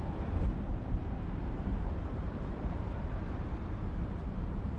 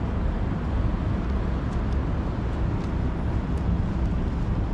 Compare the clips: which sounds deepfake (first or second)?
first